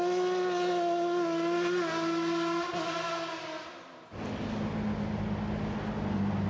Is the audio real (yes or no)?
yes